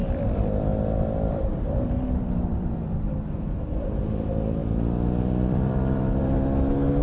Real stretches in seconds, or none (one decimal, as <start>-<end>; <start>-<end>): 4.0-4.6; 6.2-7.0